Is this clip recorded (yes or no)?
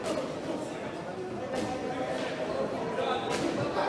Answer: yes